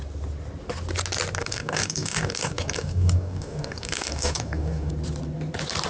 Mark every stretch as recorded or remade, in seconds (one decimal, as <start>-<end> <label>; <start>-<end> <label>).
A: 0.0-1.4 recorded; 1.4-4.9 remade; 4.9-5.9 recorded